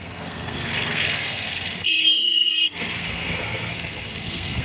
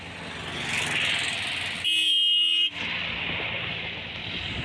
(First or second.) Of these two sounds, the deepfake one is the first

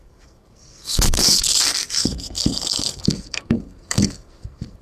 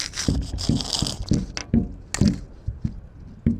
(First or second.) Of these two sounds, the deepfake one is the first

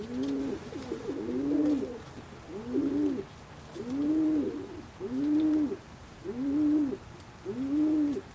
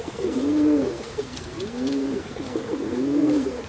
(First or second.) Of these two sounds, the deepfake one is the second